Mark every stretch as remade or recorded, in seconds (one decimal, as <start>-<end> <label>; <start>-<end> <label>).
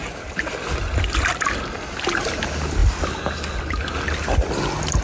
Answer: 0.0-5.0 recorded